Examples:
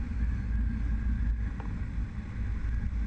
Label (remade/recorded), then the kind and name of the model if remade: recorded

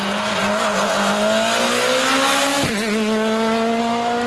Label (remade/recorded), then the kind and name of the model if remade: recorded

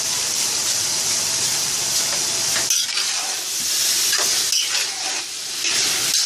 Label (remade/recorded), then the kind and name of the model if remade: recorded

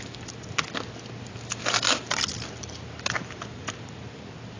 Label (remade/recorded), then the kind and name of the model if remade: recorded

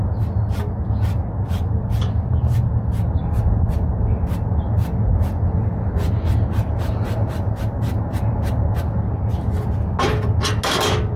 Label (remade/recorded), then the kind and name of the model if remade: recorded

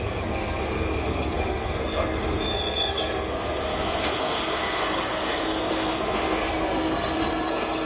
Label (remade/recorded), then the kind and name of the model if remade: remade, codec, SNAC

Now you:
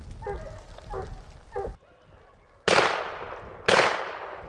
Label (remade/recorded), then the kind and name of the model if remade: recorded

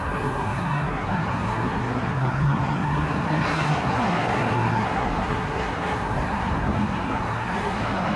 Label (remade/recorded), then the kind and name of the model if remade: remade, codec, SNAC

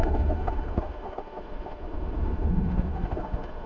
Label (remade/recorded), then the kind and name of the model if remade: remade, autoencoder, DAC-VAE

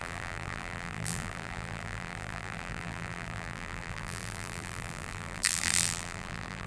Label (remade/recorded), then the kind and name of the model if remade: remade, vocoder, BigVGAN v2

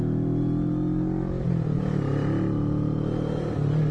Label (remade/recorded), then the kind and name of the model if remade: recorded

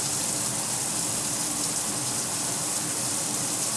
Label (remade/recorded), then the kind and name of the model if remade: recorded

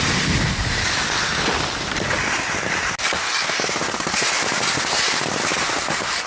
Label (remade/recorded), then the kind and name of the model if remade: recorded